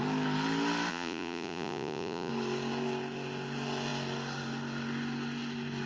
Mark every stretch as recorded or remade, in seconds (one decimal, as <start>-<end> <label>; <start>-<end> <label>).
0.0-0.9 recorded; 0.9-2.3 remade; 2.3-5.9 recorded